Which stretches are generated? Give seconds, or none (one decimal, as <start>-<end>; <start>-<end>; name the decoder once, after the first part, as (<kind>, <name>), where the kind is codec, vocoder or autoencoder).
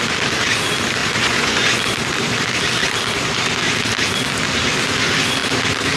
1.0-1.8 (vocoder, Vocos)